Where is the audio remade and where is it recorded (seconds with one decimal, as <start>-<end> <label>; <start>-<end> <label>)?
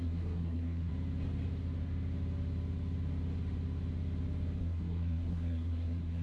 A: 0.0-0.9 remade; 0.9-4.6 recorded; 4.6-6.2 remade